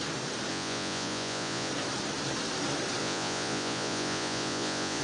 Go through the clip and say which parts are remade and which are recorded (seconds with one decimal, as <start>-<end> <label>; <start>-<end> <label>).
0.0-0.5 recorded; 0.5-1.7 remade; 1.7-3.0 recorded; 3.0-5.0 remade